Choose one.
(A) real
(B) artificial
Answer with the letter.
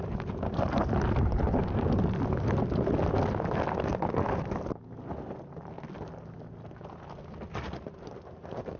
A